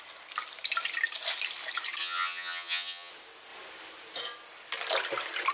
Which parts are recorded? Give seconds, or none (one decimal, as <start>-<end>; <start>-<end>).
0.0-2.0; 3.1-5.5